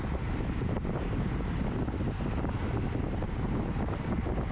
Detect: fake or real real